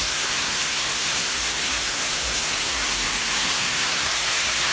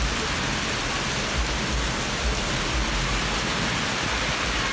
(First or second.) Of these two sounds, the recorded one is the second